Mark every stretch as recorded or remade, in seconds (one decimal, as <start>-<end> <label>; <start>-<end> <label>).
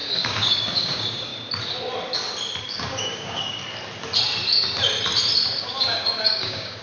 0.0-1.3 remade; 1.3-2.6 recorded; 2.6-3.6 remade; 3.6-5.6 recorded; 5.6-6.8 remade